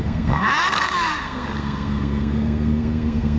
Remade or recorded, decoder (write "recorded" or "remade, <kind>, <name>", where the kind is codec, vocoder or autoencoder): remade, codec, SNAC